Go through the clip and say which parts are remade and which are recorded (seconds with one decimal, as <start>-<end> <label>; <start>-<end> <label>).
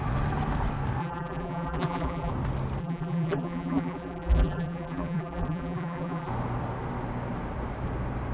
0.0-1.0 recorded; 1.0-2.3 remade; 2.3-2.8 recorded; 2.8-6.3 remade; 6.3-8.3 recorded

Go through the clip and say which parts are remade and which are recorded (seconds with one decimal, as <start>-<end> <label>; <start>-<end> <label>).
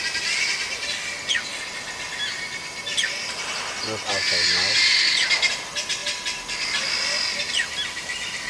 0.0-6.0 recorded; 6.0-7.5 remade; 7.5-8.5 recorded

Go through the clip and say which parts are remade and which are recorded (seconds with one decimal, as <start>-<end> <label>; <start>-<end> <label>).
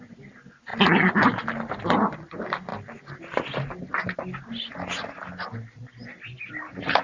0.0-0.7 remade; 0.7-1.8 recorded; 1.8-2.7 remade; 2.7-6.5 recorded; 6.5-7.0 remade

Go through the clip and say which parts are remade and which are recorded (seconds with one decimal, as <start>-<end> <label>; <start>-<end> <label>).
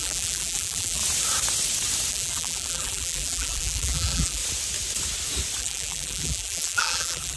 0.0-1.0 remade; 1.0-2.1 recorded; 2.1-4.4 remade; 4.4-5.6 recorded; 5.6-7.4 remade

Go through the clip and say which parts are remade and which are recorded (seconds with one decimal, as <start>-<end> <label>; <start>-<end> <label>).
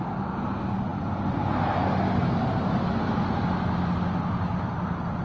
0.0-5.2 recorded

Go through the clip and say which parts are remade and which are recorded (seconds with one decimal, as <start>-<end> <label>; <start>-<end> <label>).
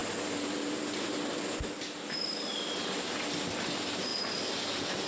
0.0-1.3 remade; 1.3-4.1 recorded; 4.1-5.1 remade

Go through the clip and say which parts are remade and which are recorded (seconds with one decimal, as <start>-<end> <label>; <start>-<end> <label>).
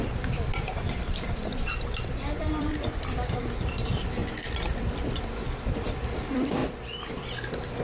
0.0-4.2 remade; 4.2-5.4 recorded; 5.4-6.6 remade; 6.6-7.1 recorded; 7.1-7.8 remade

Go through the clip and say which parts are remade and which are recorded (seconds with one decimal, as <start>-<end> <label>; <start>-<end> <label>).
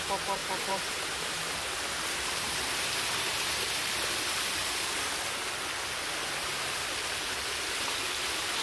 0.0-0.4 recorded; 0.4-4.9 remade; 4.9-8.6 recorded